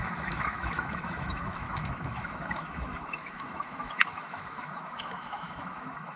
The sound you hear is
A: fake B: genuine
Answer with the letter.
A